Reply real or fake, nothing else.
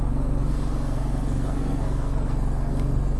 fake